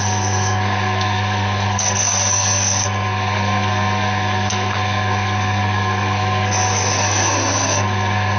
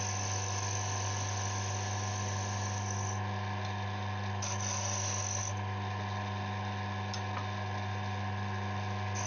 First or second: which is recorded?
second